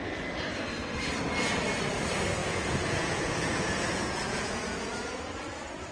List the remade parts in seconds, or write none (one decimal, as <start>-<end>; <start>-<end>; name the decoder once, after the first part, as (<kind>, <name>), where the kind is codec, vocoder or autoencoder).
2.4-4.9 (vocoder, Vocos)